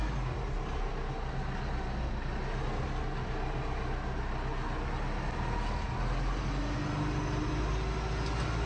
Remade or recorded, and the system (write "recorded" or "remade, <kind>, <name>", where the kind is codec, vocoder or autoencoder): recorded